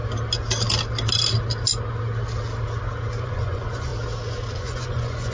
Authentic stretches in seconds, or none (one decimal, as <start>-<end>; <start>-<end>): 0.0-3.2; 3.9-4.5